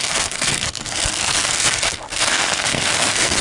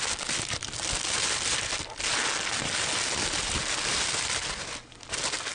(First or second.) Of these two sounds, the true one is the second